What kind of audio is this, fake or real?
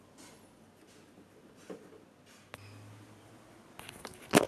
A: real